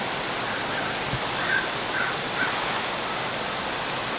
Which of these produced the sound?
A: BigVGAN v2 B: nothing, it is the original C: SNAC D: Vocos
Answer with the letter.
A